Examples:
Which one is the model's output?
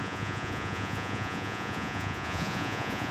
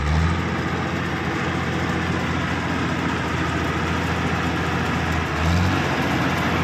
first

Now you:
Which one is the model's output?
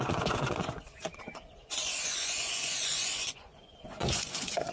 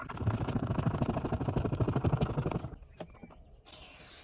first